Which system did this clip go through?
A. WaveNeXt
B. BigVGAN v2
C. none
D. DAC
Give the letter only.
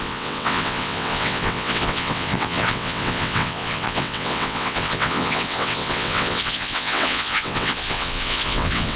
A